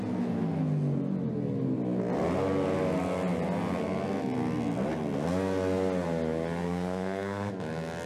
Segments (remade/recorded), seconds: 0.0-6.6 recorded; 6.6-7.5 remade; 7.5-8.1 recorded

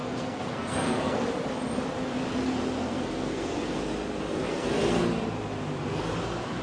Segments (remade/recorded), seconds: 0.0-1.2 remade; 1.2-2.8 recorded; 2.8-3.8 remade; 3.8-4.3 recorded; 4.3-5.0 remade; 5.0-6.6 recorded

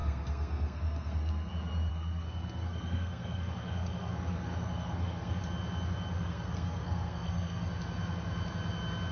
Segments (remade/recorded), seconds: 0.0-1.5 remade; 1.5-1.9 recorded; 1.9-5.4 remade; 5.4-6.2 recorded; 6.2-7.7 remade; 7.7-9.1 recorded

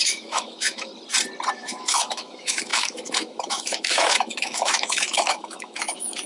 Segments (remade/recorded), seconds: 0.0-0.9 remade; 0.9-1.5 recorded; 1.5-6.3 remade

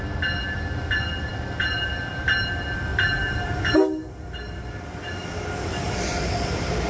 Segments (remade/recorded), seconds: 0.0-2.9 recorded; 2.9-3.6 remade; 3.6-5.8 recorded; 5.8-6.9 remade